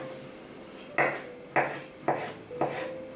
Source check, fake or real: real